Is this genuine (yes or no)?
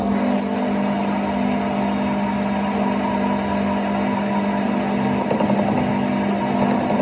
yes